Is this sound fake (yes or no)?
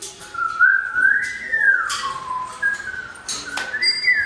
no